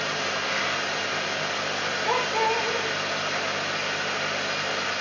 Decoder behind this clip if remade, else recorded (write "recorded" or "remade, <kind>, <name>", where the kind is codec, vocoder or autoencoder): recorded